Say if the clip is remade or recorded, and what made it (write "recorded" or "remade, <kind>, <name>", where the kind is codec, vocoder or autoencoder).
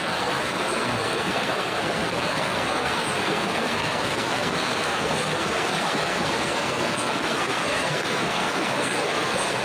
remade, codec, SNAC